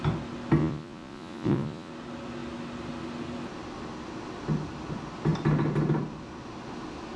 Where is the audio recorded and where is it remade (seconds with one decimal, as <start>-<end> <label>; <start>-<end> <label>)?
0.0-0.6 recorded; 0.6-1.9 remade; 1.9-7.2 recorded